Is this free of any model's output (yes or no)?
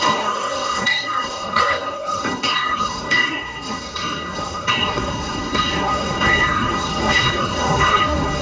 no